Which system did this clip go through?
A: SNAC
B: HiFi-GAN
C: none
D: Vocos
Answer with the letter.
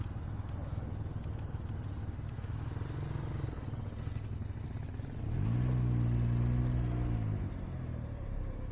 C